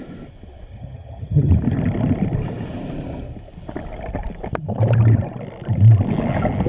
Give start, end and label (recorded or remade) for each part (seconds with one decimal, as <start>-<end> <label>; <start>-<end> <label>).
0.0-0.7 recorded; 0.7-1.5 remade; 1.5-6.7 recorded